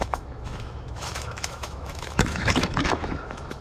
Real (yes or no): no